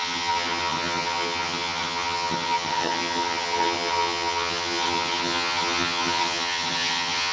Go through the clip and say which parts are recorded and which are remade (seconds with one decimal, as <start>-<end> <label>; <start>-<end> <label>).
0.0-7.3 remade